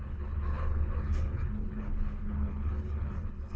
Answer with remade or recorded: remade